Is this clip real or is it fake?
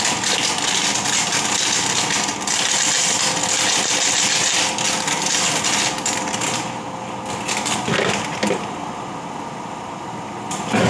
real